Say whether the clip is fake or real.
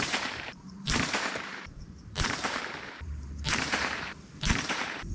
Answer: fake